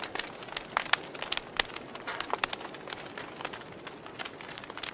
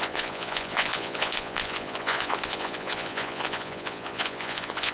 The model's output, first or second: second